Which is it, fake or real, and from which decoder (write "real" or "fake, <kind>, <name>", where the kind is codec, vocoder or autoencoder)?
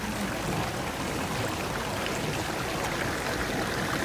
real